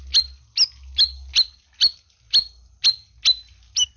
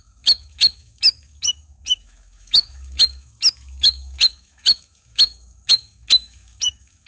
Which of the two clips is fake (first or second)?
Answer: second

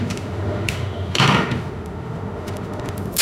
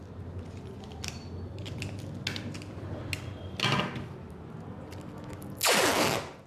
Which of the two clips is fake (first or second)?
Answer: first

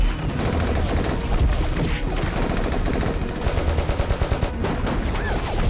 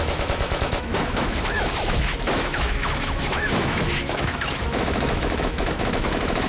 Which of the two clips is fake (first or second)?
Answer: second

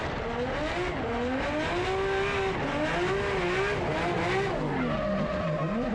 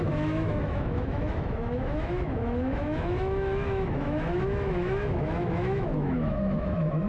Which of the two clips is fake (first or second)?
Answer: second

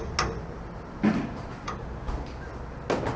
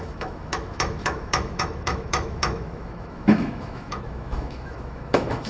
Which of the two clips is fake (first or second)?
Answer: second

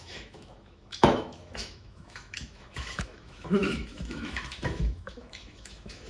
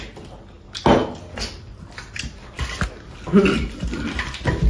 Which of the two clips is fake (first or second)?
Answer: first